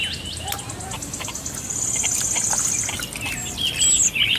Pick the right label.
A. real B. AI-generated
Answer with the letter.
A